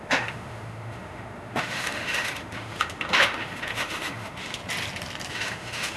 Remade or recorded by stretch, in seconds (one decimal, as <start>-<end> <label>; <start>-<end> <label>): 0.0-4.6 remade; 4.6-5.3 recorded; 5.3-6.0 remade